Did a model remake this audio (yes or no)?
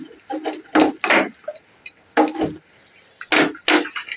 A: no